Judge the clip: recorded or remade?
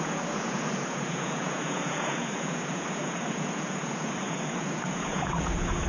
remade